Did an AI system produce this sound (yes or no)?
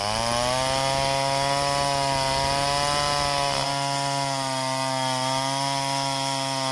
no